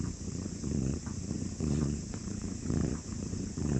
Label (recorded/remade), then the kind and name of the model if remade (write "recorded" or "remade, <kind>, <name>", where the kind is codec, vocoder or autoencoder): remade, vocoder, Vocos